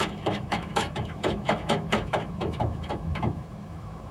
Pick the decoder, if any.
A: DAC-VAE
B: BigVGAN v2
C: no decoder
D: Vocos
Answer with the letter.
A